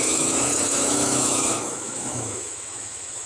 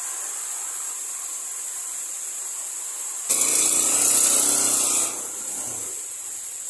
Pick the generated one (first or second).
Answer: first